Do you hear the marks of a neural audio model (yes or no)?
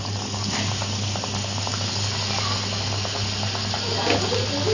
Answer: no